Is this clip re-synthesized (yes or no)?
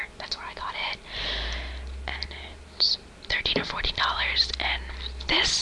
no